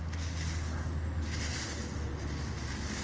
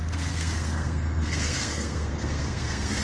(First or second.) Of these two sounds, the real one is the first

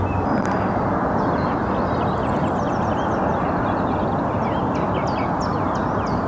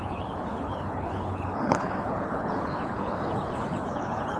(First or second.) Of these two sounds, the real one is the first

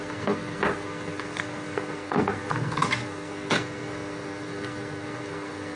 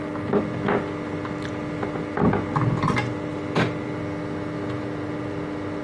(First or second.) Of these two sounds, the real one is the second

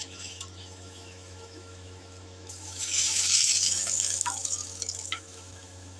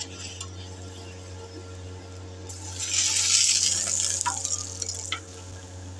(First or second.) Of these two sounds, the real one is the second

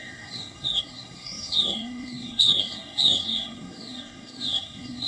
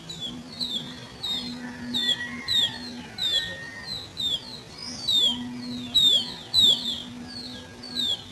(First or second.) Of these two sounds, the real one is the second